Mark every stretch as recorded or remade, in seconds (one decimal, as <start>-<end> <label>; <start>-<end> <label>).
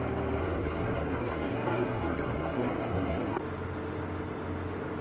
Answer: 0.0-0.4 recorded; 0.4-3.4 remade; 3.4-5.0 recorded